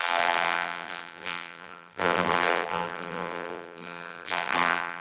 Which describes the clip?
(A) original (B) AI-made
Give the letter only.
B